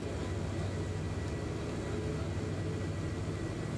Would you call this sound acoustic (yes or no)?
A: yes